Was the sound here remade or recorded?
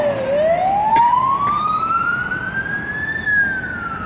recorded